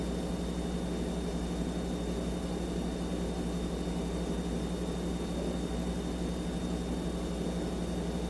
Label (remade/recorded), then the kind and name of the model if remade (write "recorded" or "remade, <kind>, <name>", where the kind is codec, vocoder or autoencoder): recorded